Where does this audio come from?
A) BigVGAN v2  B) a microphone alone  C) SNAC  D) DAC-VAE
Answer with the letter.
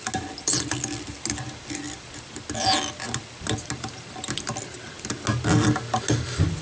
B